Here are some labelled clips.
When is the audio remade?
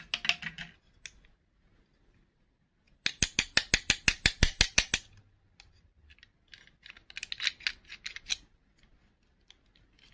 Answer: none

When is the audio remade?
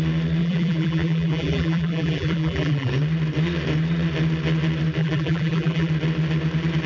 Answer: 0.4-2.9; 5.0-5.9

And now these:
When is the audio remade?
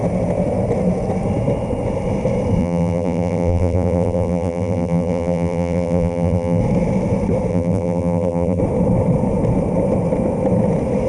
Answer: 2.6-6.6; 7.5-8.6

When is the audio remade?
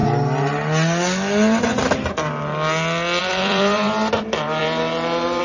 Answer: 3.2-5.4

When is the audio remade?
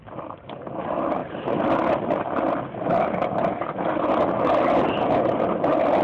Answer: none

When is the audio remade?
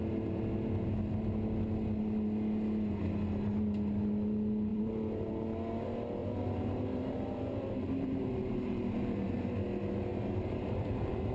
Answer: 4.7-5.3; 6.2-9.5; 10.1-11.3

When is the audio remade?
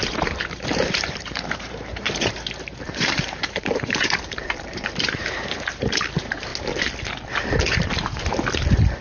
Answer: 0.0-6.5